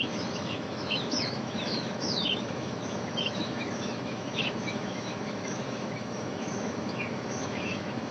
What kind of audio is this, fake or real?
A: fake